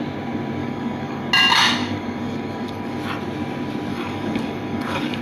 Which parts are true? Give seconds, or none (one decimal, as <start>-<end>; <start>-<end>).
0.0-0.6; 1.3-1.8; 3.0-3.9